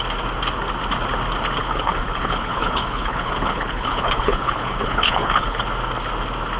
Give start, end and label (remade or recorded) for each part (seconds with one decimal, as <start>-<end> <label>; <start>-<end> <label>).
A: 0.0-1.6 recorded; 1.6-5.6 remade; 5.6-6.6 recorded